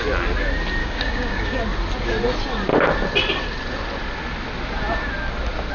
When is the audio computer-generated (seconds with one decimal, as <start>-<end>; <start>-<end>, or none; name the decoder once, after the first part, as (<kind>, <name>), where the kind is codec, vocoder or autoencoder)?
0.8-1.6 (codec, DAC)